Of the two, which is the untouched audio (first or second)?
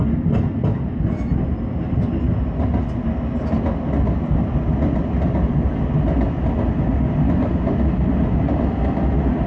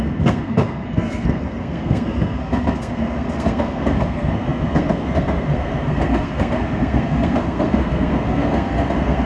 first